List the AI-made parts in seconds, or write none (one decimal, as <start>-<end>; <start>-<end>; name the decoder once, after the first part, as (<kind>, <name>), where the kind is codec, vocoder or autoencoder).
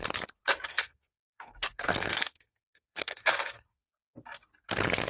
0.7-3.8 (codec, SNAC)